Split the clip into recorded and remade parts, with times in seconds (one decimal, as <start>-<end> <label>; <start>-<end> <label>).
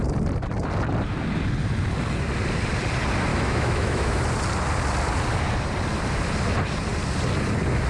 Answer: 0.0-3.3 recorded; 3.3-4.2 remade; 4.2-7.9 recorded